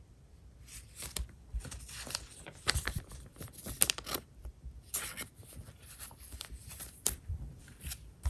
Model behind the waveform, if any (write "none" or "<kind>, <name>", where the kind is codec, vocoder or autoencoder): vocoder, BigVGAN v2